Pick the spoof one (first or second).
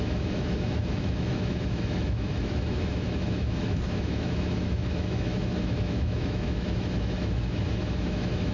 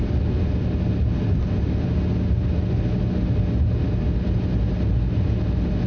first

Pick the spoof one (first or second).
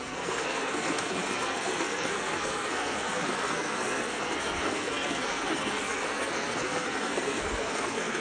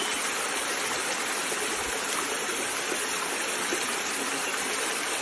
first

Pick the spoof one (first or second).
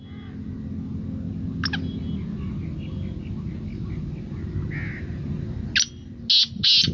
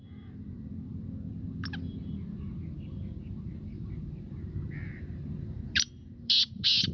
second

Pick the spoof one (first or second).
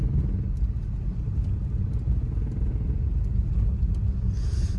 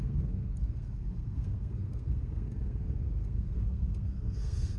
second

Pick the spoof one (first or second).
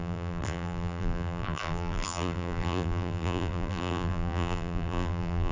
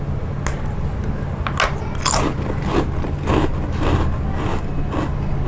first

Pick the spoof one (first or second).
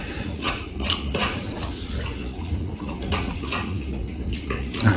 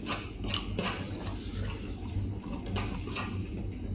first